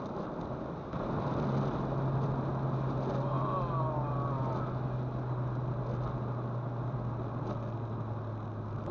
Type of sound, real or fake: real